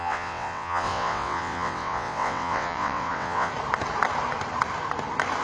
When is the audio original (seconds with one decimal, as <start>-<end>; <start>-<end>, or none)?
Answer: 3.5-5.4